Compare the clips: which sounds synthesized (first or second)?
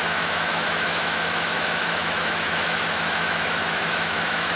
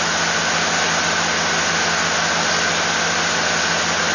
first